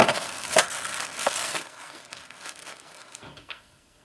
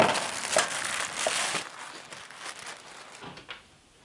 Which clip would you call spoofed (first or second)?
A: first